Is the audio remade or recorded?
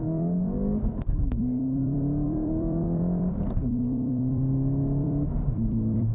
remade